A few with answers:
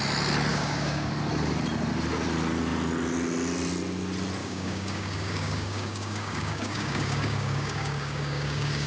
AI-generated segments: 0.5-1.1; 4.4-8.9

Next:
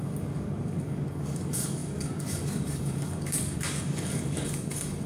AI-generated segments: 0.0-5.1

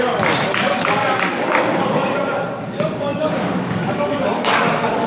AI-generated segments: 0.0-1.0; 1.8-5.1

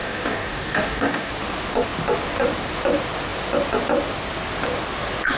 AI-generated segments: 0.0-1.3

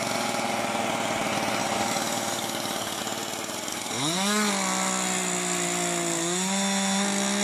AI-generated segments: 1.6-3.0; 3.7-4.5

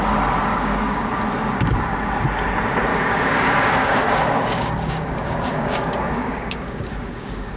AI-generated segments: 0.5-1.1; 2.9-7.6

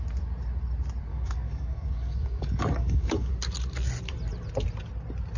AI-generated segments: 1.1-3.3